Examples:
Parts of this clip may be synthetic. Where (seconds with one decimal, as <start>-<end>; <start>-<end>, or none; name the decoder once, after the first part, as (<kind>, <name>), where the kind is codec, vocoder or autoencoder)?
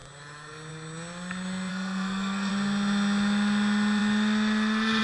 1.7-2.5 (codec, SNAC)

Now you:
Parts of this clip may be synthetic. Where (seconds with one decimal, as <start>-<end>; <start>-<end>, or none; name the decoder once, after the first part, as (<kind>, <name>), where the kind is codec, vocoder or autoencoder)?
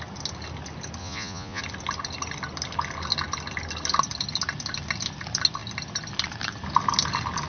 1.0-1.6 (vocoder, Vocos)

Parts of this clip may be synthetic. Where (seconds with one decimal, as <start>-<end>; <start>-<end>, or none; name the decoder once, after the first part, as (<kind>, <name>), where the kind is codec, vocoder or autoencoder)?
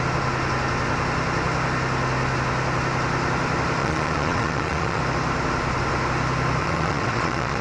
3.8-5.0 (vocoder, Vocos); 6.6-7.6